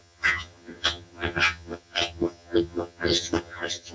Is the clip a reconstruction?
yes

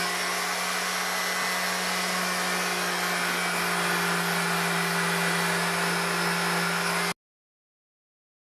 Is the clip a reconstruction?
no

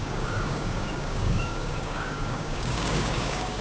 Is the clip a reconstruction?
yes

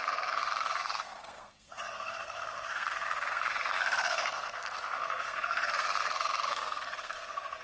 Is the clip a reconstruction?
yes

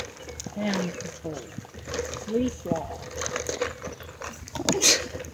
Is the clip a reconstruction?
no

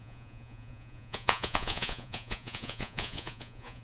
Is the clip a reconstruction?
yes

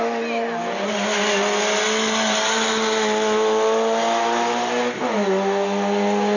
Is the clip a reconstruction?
no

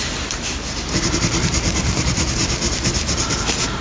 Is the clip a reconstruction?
yes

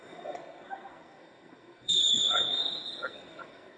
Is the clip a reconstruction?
yes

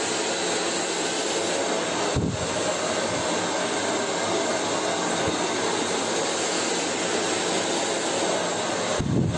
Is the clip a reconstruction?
no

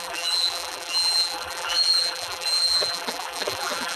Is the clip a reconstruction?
yes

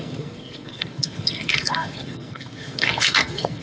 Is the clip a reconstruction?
yes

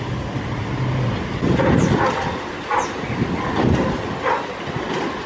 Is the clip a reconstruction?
no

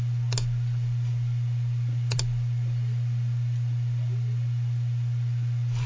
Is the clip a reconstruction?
no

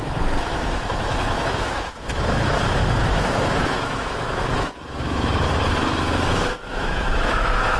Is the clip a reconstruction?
yes